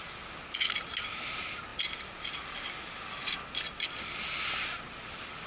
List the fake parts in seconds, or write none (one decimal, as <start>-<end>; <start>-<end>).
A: none